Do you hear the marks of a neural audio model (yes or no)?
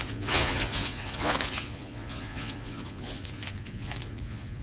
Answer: yes